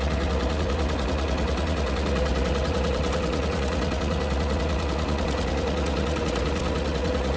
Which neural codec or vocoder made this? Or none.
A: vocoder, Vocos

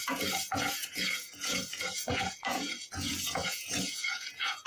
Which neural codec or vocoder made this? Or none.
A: vocoder, Vocos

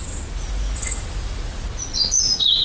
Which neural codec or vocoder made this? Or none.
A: vocoder, Vocos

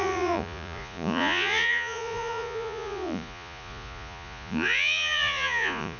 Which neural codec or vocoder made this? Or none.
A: vocoder, Vocos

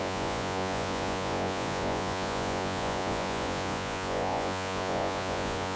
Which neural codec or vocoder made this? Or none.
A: vocoder, Vocos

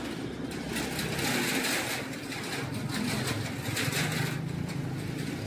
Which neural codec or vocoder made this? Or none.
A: none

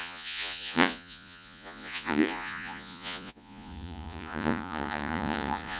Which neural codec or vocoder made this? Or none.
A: vocoder, Vocos